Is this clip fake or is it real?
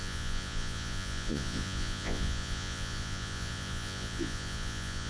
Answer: fake